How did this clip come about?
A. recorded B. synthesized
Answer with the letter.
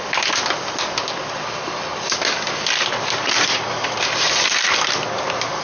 A